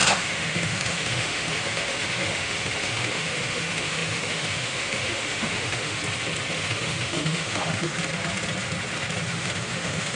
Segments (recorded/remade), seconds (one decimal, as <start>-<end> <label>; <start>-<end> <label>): 0.0-6.0 remade; 6.0-6.5 recorded; 6.5-7.9 remade; 7.9-9.3 recorded; 9.3-10.1 remade